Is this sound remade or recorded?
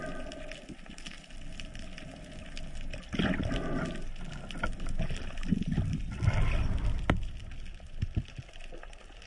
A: recorded